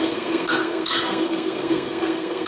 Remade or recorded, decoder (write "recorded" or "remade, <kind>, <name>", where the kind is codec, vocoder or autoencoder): remade, codec, SNAC